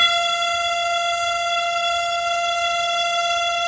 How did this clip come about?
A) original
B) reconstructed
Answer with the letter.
B